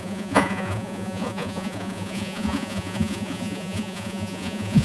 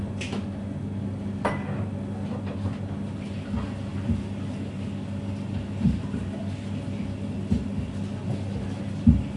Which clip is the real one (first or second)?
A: second